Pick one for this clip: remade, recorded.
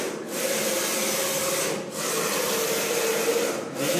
recorded